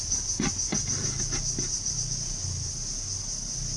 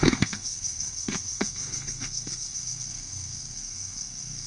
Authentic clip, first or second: first